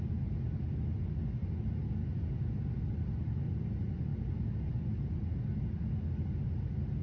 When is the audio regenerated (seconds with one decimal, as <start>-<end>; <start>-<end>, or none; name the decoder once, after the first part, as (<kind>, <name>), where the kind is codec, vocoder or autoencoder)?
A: none